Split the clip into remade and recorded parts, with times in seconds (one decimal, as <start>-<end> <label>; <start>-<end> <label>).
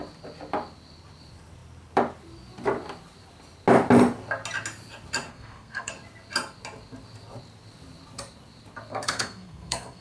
0.0-5.3 recorded; 5.3-5.9 remade; 5.9-8.9 recorded; 8.9-10.0 remade